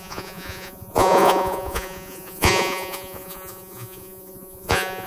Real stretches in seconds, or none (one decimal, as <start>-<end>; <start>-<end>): none